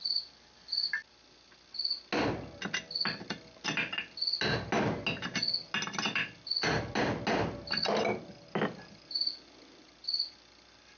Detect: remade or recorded recorded